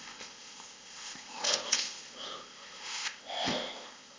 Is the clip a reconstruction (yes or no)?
yes